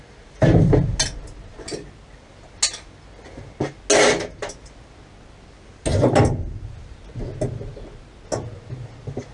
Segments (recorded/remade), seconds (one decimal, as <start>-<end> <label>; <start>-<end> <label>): 0.0-9.3 recorded